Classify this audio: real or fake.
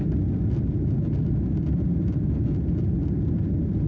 real